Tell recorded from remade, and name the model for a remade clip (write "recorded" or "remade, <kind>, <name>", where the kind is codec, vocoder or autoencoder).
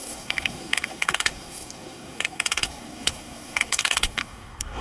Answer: remade, codec, SNAC